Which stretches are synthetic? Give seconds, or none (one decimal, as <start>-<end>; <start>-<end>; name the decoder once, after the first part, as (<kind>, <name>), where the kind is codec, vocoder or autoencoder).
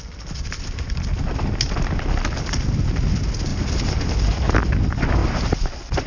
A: 3.5-4.1 (vocoder, BigVGAN v2); 5.2-6.1